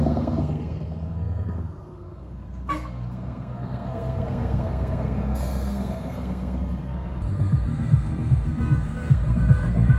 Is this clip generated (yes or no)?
yes